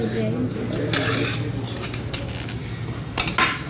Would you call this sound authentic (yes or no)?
yes